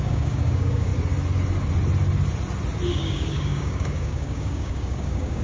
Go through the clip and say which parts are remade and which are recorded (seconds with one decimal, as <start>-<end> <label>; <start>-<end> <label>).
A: 0.0-0.9 remade; 0.9-2.9 recorded; 2.9-5.4 remade

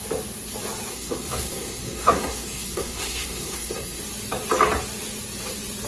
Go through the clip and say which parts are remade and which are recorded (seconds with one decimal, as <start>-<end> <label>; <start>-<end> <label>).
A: 0.0-0.9 recorded; 0.9-4.0 remade; 4.0-5.9 recorded